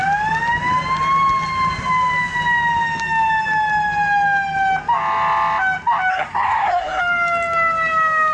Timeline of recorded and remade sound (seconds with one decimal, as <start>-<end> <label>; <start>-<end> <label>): 0.0-6.1 recorded; 6.1-7.0 remade; 7.0-8.3 recorded